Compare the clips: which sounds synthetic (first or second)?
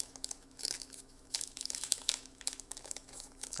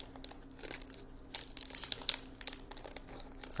first